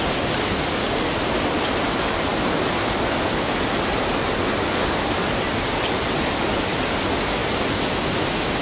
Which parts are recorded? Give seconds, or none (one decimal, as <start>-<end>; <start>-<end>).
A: 0.0-8.6